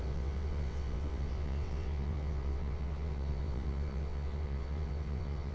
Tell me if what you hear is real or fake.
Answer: fake